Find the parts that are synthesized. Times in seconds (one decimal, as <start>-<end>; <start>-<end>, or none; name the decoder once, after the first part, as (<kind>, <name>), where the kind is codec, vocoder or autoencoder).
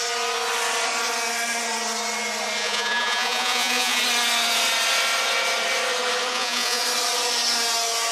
2.6-4.0 (vocoder, Vocos); 6.3-6.8